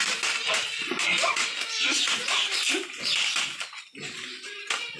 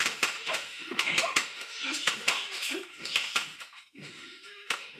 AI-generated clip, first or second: second